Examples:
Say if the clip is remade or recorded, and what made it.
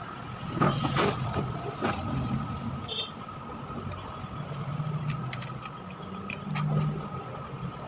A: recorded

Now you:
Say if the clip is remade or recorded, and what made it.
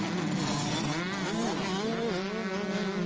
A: recorded